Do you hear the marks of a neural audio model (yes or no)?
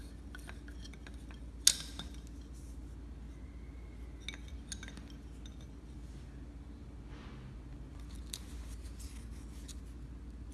no